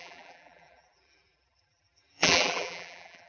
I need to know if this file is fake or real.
fake